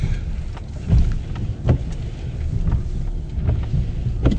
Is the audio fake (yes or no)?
no